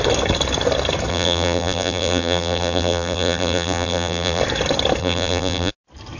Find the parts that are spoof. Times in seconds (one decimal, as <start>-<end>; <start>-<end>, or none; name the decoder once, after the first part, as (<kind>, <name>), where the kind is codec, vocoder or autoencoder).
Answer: 1.1-4.4 (vocoder, BigVGAN v2); 5.0-5.7

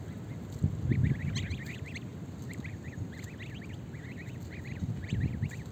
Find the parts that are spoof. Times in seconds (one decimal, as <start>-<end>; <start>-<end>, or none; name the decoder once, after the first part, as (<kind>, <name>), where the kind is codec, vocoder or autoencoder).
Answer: none

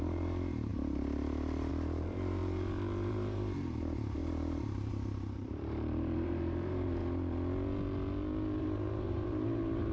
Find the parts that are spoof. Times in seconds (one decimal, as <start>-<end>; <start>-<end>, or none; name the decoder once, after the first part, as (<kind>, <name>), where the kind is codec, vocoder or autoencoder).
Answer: 0.0-0.7 (vocoder, BigVGAN v2); 1.7-7.0; 8.6-9.9

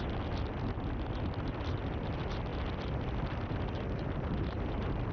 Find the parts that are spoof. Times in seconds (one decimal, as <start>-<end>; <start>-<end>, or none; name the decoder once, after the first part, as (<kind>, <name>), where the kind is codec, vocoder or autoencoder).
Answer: 2.5-5.1 (vocoder, BigVGAN v2)

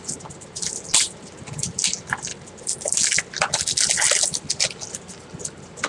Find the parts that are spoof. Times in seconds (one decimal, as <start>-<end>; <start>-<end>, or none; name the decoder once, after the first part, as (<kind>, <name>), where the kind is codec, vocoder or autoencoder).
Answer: none

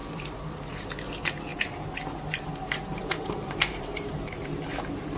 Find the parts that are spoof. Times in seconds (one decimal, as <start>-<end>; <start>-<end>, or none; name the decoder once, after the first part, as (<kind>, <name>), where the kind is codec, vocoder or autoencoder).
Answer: 0.0-0.9 (vocoder, BigVGAN v2); 1.5-4.6

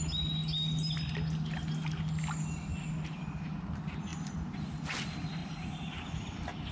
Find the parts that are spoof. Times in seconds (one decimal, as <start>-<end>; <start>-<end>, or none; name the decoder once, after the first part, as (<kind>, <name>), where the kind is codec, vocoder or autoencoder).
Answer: 5.4-5.9 (vocoder, BigVGAN v2)